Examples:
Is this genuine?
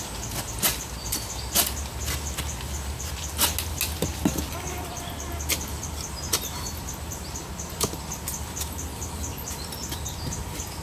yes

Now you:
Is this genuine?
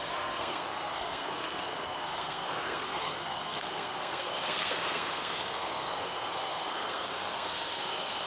no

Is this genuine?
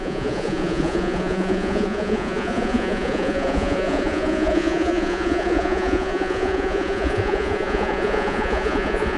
no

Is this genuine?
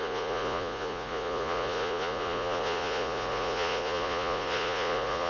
no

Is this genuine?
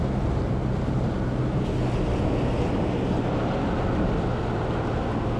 yes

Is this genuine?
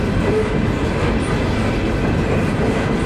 yes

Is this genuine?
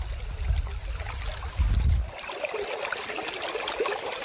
yes